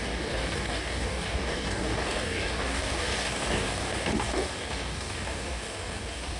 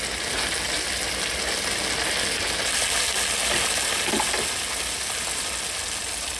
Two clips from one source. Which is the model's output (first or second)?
first